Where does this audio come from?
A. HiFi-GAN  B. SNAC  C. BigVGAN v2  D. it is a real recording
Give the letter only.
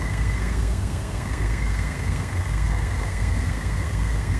B